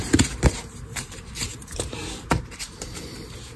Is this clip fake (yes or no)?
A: yes